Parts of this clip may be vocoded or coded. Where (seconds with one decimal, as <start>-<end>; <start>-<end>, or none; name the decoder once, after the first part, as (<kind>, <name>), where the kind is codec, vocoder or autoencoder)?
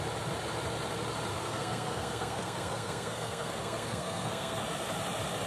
1.3-4.6 (codec, SNAC)